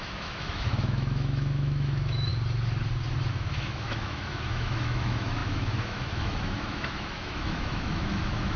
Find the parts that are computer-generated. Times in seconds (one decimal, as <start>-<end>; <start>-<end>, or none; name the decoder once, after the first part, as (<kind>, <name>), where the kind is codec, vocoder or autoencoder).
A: 0.0-2.3 (autoencoder, DAC-VAE); 3.3-8.6